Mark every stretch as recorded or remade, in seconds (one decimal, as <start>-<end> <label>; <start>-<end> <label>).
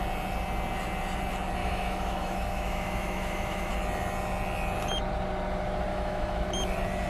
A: 0.0-1.6 recorded; 1.6-3.7 remade; 3.7-5.9 recorded; 5.9-6.5 remade; 6.5-7.1 recorded